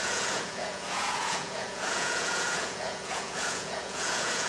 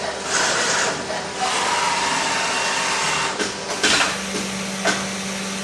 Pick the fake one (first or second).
first